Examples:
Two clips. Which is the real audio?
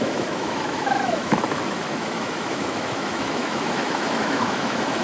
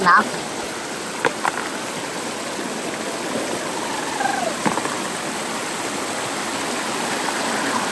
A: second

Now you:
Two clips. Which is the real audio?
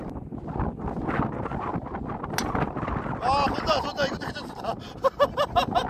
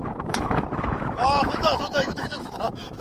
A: first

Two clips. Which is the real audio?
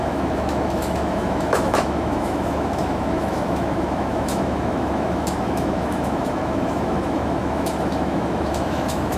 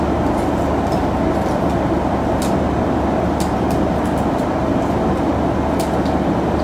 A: second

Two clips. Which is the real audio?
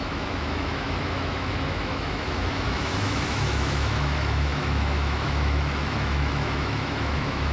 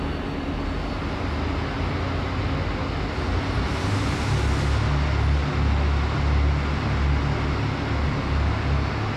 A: second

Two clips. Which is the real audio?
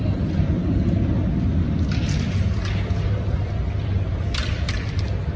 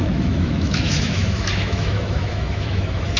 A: first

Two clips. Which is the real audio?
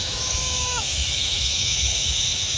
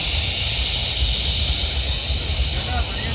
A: second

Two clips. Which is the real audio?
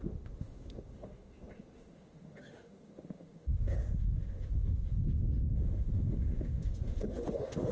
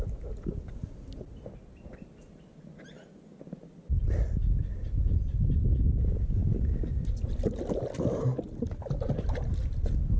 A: second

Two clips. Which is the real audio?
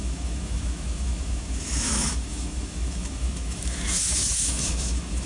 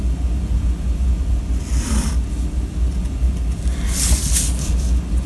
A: second